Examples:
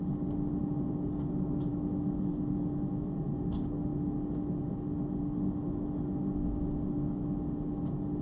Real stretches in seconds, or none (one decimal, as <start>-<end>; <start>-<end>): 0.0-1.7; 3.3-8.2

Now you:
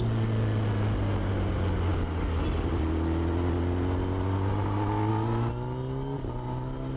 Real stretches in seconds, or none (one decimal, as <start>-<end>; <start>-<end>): 0.0-7.0

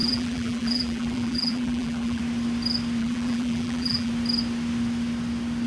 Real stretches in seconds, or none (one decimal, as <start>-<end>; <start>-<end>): 2.2-3.0; 4.1-5.7

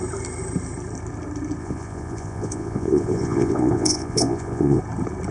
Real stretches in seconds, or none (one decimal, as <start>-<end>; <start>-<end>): 0.0-1.6; 4.8-5.3